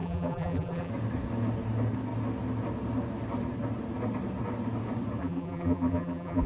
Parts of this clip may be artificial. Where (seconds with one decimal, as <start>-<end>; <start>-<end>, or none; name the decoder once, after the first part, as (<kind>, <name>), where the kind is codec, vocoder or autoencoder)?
0.0-0.9 (vocoder, BigVGAN v2); 5.2-6.5